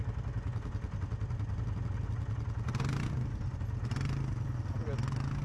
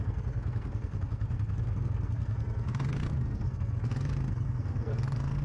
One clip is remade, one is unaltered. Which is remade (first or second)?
second